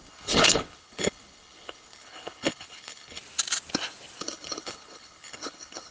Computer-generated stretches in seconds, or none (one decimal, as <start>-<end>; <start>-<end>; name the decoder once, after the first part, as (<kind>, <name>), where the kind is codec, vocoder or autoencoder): 0.0-3.2 (codec, HILCodec); 4.2-5.9